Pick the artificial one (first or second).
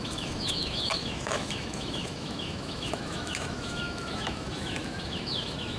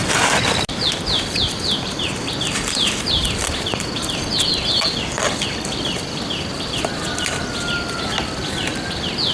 first